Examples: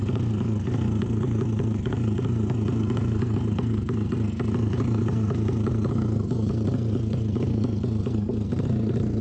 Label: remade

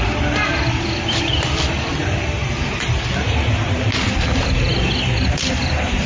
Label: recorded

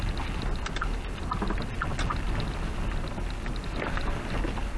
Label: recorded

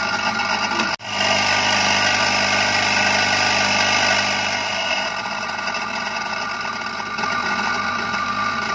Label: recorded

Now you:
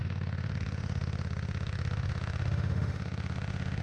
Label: remade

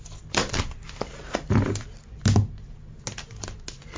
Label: recorded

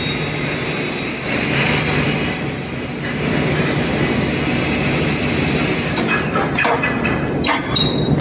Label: recorded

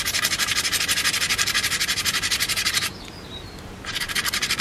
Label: remade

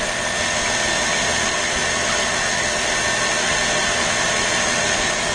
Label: recorded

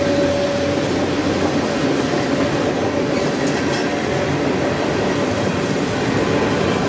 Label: recorded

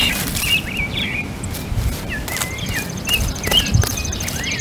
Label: remade